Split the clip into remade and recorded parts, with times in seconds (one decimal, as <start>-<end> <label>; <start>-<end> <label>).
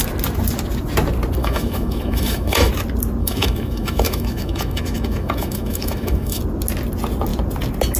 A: 0.0-1.4 recorded; 1.4-2.7 remade; 2.7-3.2 recorded; 3.2-6.4 remade; 6.4-8.0 recorded